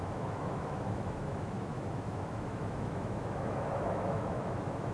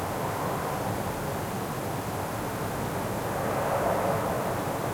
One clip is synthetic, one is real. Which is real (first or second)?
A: second